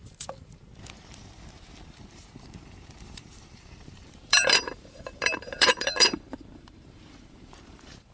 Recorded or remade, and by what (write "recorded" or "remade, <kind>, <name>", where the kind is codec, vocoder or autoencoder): remade, vocoder, BigVGAN v2